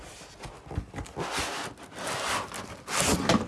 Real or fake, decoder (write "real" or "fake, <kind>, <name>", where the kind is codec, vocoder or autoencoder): real